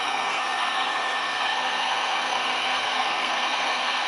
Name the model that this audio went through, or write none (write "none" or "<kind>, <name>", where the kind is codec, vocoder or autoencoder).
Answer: codec, SNAC